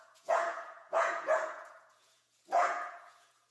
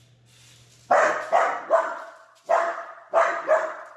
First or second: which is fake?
first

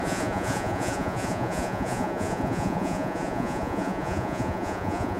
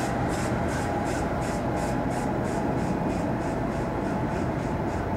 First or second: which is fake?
first